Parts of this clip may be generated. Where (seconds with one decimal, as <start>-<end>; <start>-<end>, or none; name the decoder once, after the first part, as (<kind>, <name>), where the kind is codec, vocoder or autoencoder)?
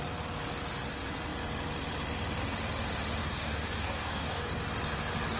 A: 3.2-4.5 (codec, DAC)